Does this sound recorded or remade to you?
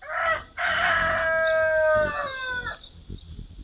recorded